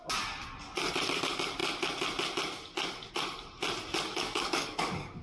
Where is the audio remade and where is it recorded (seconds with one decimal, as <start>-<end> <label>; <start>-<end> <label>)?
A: 0.0-4.1 recorded; 4.1-5.2 remade